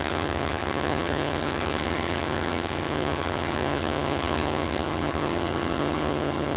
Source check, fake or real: fake